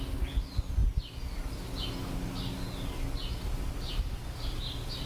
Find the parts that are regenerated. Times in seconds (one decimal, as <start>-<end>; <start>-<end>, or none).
0.0-0.8; 3.9-5.1